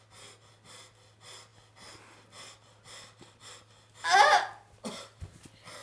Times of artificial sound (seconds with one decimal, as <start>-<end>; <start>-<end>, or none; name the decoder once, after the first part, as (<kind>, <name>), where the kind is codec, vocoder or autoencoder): none